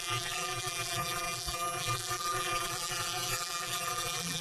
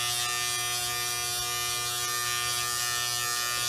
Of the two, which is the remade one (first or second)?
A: first